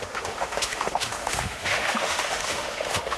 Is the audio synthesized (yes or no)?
yes